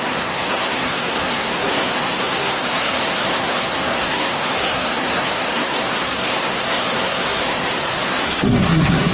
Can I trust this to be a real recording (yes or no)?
no